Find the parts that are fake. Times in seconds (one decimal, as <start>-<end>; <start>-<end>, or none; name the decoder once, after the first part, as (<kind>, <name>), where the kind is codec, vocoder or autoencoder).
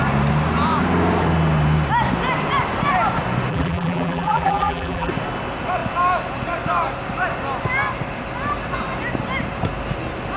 3.5-5.1 (vocoder, BigVGAN v2)